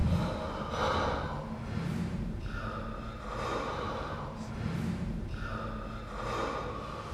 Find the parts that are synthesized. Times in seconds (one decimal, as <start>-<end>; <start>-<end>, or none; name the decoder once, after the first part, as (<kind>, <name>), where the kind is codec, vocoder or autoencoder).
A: 1.9-5.6 (vocoder, BigVGAN v2)